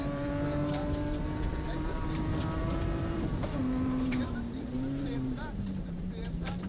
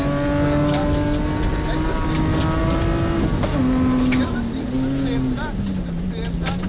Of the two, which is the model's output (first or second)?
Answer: first